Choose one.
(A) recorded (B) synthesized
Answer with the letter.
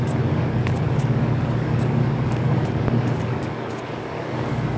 B